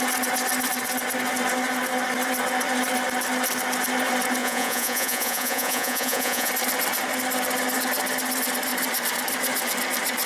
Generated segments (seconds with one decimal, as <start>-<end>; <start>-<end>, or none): 4.4-6.5